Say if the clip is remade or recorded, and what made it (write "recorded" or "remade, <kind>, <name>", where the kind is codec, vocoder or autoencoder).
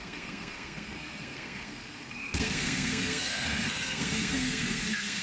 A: remade, codec, SNAC